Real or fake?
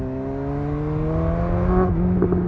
real